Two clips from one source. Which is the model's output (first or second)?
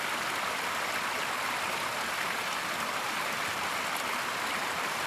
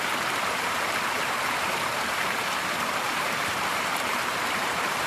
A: second